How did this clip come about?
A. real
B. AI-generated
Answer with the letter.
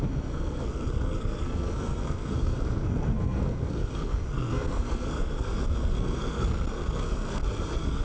B